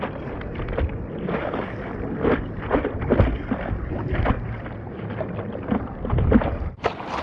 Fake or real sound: real